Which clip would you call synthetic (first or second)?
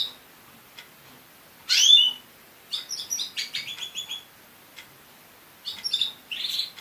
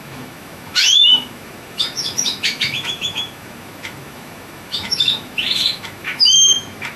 second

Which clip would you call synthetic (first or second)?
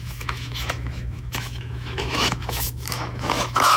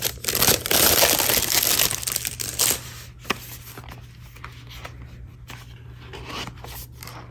first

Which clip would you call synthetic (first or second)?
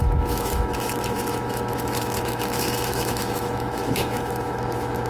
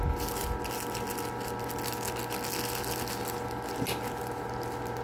first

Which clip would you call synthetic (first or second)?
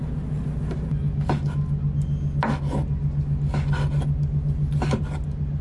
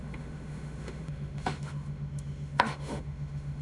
second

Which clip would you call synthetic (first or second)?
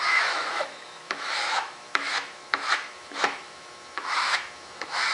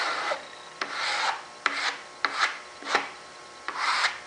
first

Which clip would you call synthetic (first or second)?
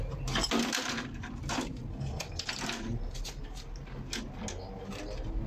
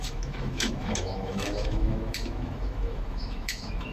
second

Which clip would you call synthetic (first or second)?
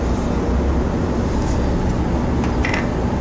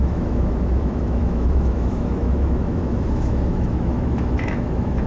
second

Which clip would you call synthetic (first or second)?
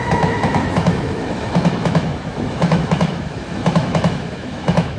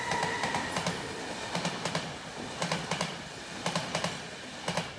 first